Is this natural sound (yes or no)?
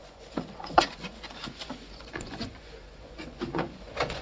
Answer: no